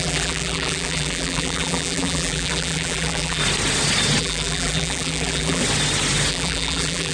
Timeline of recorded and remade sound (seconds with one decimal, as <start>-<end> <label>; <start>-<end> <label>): 0.0-3.4 remade; 3.4-4.2 recorded; 4.2-5.6 remade; 5.6-6.3 recorded; 6.3-7.1 remade